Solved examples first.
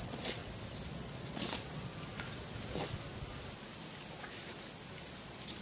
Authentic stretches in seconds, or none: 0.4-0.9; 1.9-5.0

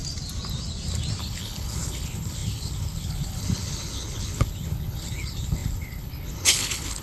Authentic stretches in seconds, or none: 0.0-1.2